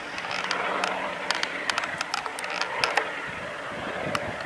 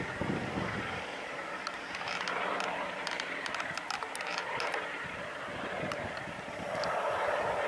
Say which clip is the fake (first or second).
second